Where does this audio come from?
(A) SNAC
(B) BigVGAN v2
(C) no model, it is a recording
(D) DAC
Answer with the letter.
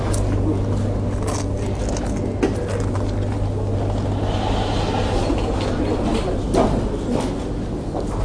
C